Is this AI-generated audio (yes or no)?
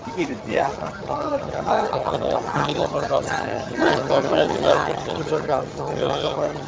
yes